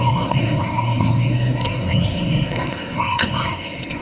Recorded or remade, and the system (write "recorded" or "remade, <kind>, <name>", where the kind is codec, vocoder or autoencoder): remade, codec, SNAC